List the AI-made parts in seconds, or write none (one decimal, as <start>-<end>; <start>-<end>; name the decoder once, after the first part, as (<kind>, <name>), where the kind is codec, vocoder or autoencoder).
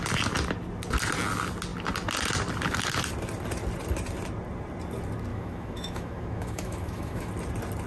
5.3-7.3 (autoencoder, DAC-VAE)